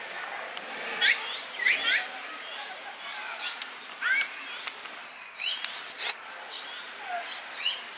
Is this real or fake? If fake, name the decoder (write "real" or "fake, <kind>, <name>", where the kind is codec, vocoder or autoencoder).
fake, vocoder, BigVGAN v2